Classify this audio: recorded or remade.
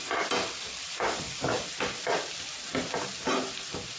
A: recorded